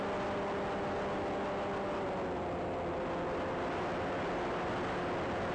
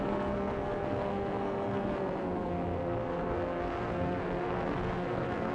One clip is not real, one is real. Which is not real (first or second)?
second